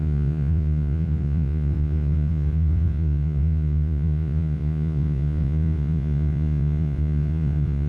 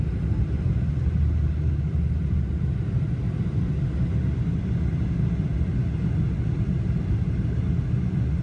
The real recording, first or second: second